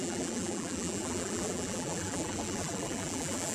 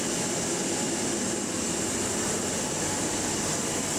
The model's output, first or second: first